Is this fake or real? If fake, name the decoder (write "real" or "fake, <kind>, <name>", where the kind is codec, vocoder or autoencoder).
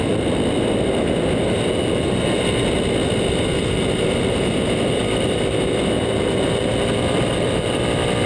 real